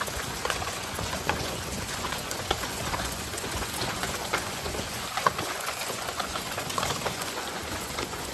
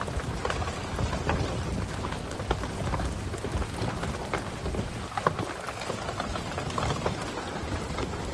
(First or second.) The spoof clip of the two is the first